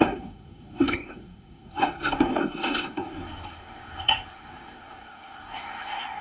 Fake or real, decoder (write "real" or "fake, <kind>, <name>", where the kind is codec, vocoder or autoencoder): fake, codec, SNAC